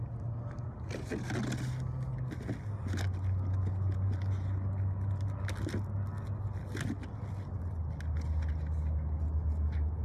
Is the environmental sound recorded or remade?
recorded